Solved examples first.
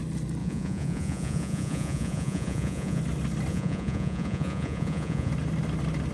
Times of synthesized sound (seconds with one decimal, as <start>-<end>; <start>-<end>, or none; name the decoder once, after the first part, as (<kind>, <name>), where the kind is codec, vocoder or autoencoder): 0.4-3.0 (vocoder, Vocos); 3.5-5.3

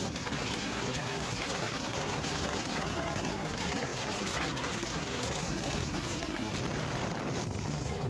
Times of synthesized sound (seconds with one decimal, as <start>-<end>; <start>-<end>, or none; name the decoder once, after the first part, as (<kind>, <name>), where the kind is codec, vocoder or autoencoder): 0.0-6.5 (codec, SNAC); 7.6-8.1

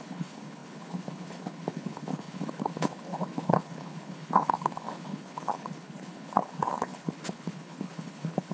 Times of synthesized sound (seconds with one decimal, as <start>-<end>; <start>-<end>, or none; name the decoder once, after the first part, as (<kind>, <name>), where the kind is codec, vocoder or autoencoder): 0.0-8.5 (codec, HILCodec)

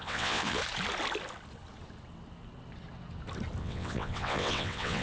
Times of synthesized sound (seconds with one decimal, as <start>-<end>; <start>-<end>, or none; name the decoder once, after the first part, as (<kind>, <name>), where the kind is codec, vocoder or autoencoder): 0.0-0.6 (vocoder, WaveNeXt); 3.6-5.0

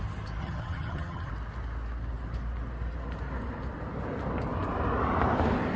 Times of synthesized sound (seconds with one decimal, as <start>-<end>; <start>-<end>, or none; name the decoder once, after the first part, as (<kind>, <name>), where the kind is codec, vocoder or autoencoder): 0.4-1.3 (vocoder, HiFi-GAN)